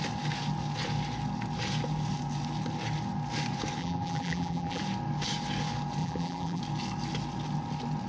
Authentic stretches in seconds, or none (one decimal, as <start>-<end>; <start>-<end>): 0.0-3.8; 4.8-6.0; 6.6-8.1